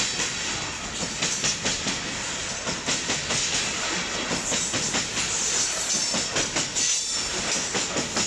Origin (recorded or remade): recorded